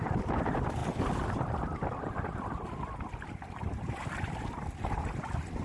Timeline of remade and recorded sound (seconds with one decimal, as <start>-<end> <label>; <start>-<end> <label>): 0.0-5.6 recorded